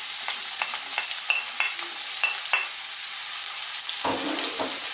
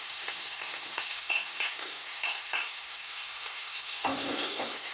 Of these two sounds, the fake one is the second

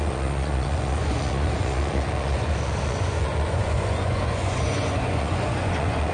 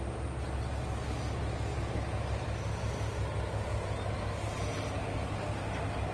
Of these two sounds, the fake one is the first